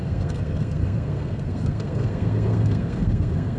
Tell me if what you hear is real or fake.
fake